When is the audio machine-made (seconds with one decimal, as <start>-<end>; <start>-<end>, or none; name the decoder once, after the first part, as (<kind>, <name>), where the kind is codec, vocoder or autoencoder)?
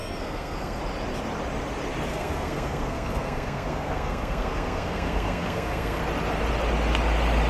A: 0.0-0.8 (codec, SNAC); 2.1-6.0